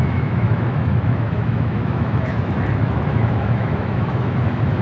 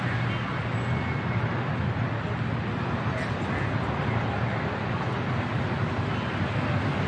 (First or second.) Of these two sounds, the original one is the second